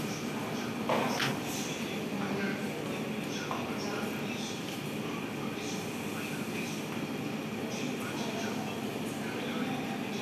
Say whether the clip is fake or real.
real